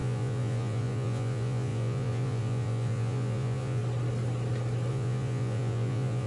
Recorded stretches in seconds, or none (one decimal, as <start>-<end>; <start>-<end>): 3.8-4.9